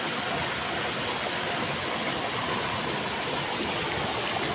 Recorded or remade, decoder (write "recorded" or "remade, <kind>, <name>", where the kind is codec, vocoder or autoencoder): recorded